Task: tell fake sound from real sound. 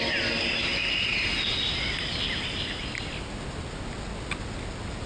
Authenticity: real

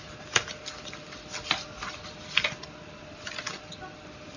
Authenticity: real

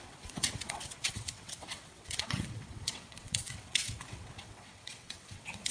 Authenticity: fake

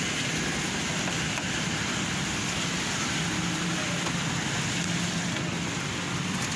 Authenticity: real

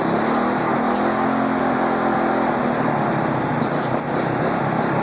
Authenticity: real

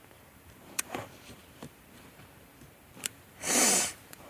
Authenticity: fake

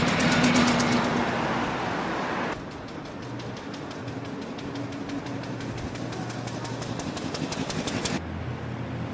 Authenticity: real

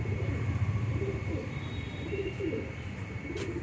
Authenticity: real